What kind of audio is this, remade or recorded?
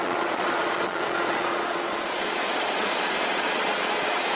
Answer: remade